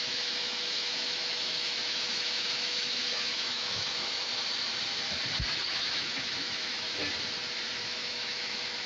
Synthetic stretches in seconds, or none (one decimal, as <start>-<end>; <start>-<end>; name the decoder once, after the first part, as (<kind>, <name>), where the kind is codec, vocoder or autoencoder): 0.0-4.3 (autoencoder, DAC-VAE); 5.7-7.0; 7.8-8.9